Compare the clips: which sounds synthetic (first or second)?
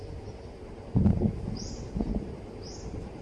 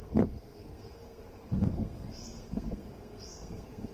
second